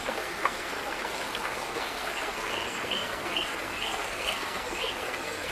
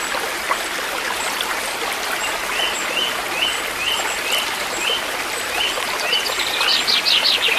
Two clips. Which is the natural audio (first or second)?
second